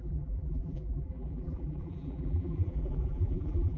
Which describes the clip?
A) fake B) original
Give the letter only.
A